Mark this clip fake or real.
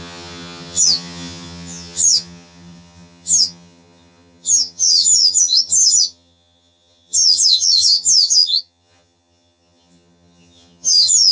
fake